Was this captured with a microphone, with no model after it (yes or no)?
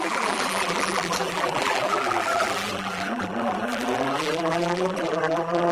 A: no